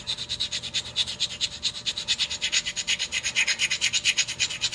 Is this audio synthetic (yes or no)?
no